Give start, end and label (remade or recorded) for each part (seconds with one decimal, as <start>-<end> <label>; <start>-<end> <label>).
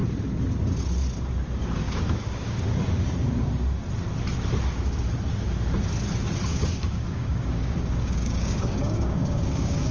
0.0-1.8 recorded; 1.8-2.6 remade; 2.6-6.5 recorded; 6.5-9.9 remade